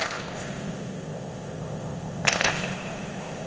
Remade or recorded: remade